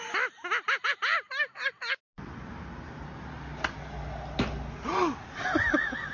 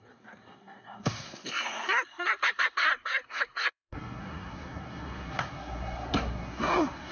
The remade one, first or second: second